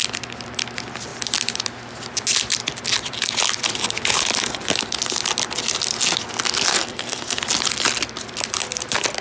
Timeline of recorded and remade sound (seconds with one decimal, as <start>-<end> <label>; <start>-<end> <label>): 0.0-6.7 recorded; 6.7-7.4 remade; 7.4-9.2 recorded